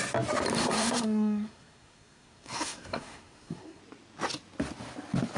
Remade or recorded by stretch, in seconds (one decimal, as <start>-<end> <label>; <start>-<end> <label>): 0.0-0.6 recorded; 0.6-3.8 remade; 3.8-5.4 recorded